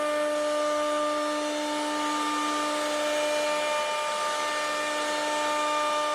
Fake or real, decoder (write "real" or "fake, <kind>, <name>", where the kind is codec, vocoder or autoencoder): real